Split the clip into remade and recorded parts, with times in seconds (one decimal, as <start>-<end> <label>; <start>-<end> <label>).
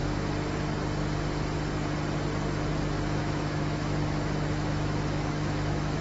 0.0-3.2 recorded; 3.2-6.0 remade